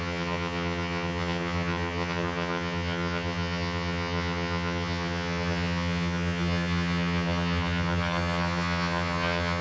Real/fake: fake